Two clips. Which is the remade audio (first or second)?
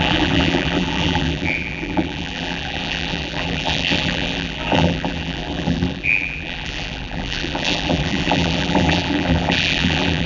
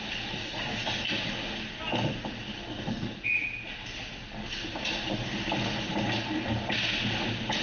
first